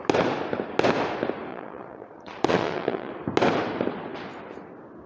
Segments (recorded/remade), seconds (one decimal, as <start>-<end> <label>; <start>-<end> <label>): 0.0-1.5 recorded; 1.5-3.1 remade; 3.1-5.1 recorded